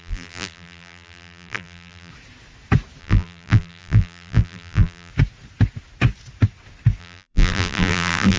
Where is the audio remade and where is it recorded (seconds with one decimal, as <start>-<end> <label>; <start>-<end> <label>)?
0.0-2.1 remade; 2.1-3.0 recorded; 3.0-5.1 remade; 5.1-7.0 recorded; 7.0-8.4 remade